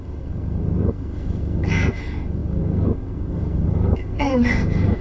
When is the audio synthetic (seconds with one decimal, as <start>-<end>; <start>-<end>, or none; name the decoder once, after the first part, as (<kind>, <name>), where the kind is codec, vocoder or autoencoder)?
0.0-5.0 (codec, SNAC)